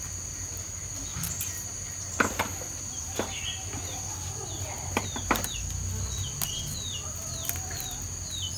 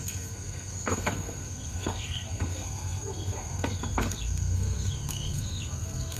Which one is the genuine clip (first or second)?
first